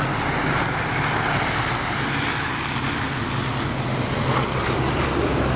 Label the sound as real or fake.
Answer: real